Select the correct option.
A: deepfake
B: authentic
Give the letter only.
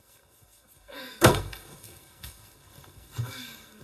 A